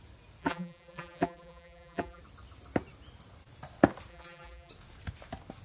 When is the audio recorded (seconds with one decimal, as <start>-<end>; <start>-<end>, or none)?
0.0-0.4; 2.2-4.1; 4.7-5.6

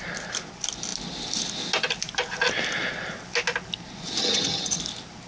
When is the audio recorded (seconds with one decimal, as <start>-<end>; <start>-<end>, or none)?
0.0-4.2; 4.8-5.3

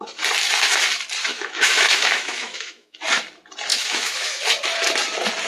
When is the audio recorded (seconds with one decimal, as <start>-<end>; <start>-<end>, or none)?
0.0-1.3; 3.0-3.7; 4.4-5.5

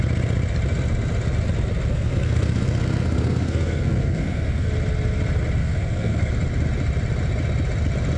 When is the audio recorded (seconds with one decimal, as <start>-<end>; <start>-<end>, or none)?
0.0-1.9; 4.7-5.6; 6.3-8.2

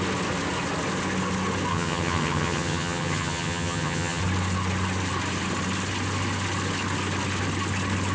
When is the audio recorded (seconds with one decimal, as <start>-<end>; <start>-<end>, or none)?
0.0-1.7; 4.2-8.1

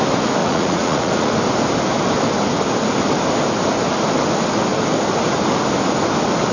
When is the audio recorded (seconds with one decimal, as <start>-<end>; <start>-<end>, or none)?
0.0-0.4; 1.3-6.5

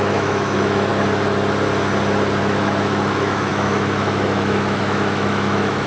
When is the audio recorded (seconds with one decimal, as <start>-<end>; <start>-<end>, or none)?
0.9-2.4